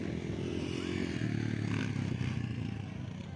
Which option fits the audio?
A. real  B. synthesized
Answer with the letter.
A